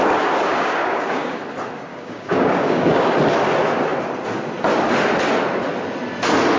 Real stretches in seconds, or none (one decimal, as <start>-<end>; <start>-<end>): 0.0-0.5; 1.4-1.9; 3.0-6.6